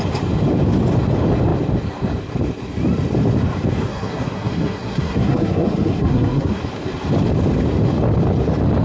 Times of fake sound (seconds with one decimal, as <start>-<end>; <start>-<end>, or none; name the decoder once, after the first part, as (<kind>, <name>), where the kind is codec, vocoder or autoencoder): 3.9-6.6 (codec, SNAC)